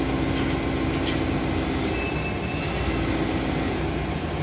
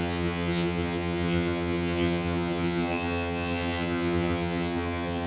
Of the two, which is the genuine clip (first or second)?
first